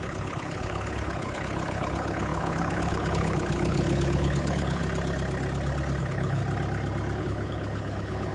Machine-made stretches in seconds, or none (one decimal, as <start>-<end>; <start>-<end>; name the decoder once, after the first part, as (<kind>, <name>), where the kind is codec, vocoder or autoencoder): 0.0-4.8 (codec, HILCodec); 6.0-6.4; 7.2-8.3